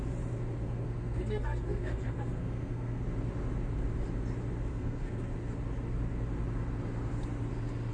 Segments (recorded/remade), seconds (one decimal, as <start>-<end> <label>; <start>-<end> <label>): 0.0-0.6 recorded; 0.6-3.0 remade; 3.0-4.7 recorded; 4.7-5.3 remade; 5.3-7.9 recorded